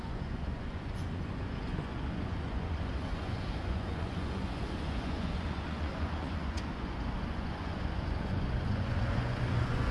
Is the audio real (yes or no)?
no